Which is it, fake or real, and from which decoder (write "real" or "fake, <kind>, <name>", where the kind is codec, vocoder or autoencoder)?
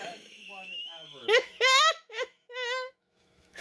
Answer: fake, autoencoder, DAC-VAE